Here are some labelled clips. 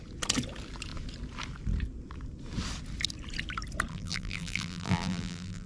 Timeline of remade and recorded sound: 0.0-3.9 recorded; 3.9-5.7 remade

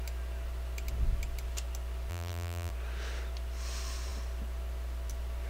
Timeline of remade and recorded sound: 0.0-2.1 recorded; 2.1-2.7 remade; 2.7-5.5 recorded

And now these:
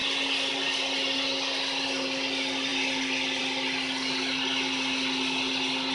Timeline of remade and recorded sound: 0.0-5.9 recorded